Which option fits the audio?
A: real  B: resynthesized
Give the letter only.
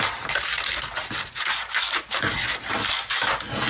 A